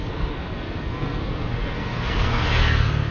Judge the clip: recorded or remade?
remade